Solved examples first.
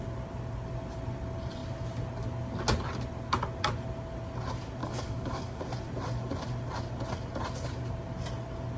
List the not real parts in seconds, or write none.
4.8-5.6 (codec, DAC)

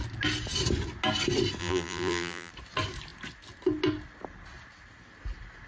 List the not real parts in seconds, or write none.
1.6-2.5 (vocoder, BigVGAN v2)

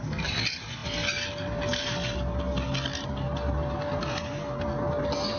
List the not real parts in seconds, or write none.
none

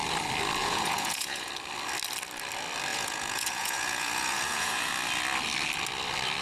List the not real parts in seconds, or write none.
0.6-1.5 (vocoder, Vocos); 2.9-4.9

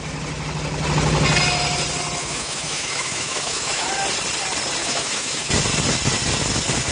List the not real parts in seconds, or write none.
2.2-3.9 (autoencoder, DAC-VAE); 4.8-5.5